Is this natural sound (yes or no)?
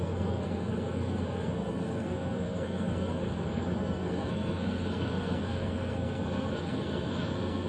no